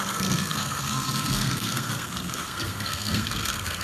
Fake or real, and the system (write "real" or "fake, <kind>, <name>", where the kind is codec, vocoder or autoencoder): fake, codec, SNAC